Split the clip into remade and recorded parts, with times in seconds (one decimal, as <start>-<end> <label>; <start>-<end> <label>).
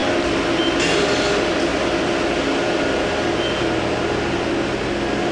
0.0-5.3 recorded